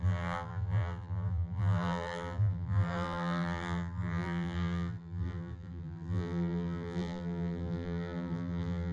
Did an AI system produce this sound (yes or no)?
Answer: yes